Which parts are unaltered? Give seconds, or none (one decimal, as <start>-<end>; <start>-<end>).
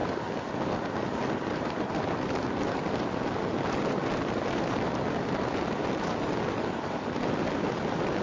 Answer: 0.0-8.2